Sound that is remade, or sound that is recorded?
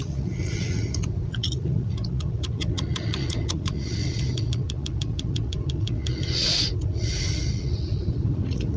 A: remade